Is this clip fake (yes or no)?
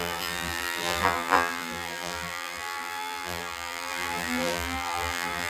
yes